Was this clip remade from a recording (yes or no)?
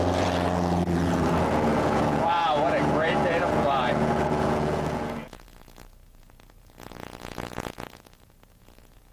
yes